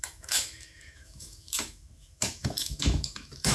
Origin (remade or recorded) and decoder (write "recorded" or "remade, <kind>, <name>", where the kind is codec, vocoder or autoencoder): remade, autoencoder, DAC-VAE